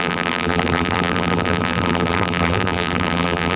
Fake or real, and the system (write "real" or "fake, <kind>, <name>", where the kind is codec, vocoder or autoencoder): fake, vocoder, BigVGAN v2